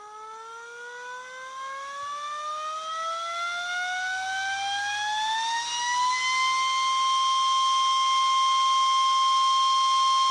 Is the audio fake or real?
real